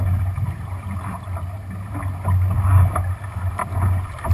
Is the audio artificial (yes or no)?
no